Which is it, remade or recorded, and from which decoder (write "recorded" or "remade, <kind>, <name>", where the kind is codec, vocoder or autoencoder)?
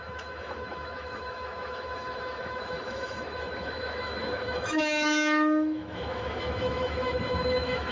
remade, autoencoder, DAC-VAE